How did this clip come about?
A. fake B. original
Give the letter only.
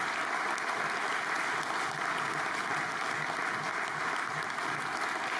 B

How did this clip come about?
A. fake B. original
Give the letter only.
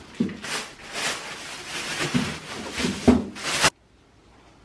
B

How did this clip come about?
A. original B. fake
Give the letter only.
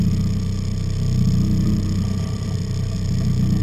A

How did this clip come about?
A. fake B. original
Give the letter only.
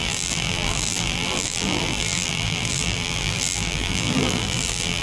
A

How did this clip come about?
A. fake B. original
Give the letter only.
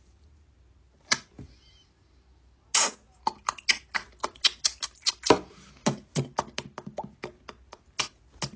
B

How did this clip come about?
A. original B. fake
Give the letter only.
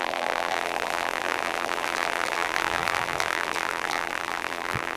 B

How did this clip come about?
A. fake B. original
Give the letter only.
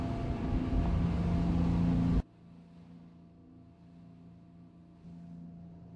B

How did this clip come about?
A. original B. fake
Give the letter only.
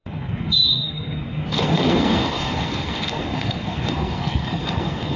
B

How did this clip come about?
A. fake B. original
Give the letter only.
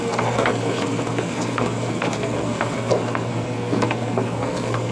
A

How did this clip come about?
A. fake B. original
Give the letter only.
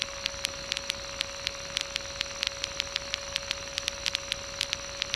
B